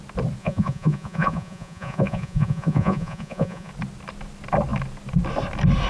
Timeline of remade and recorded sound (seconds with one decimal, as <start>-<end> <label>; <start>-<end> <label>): 0.0-0.4 recorded; 0.4-3.7 remade; 3.7-5.9 recorded